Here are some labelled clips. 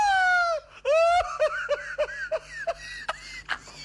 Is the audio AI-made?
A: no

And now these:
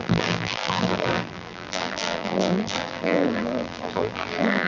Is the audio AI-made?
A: yes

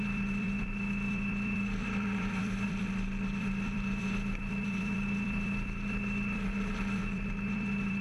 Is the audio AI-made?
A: yes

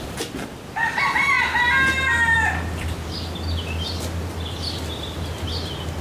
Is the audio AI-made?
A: no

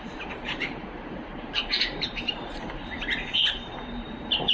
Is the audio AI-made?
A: yes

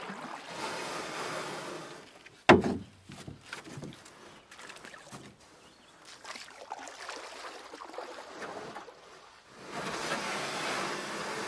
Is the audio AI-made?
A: no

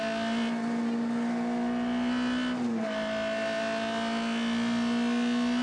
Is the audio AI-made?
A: no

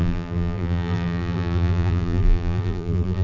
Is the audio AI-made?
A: yes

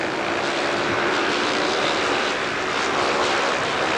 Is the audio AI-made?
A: no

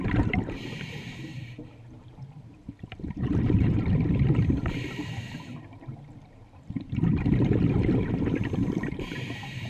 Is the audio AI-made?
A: yes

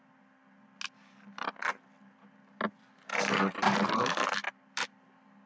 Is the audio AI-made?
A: no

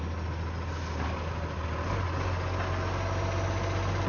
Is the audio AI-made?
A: no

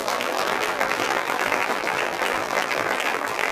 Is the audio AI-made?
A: yes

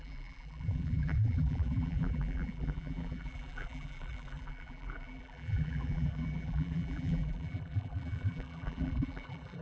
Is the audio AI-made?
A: yes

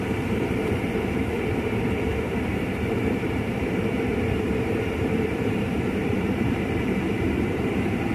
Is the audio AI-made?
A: yes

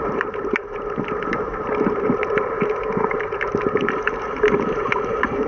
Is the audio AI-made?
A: yes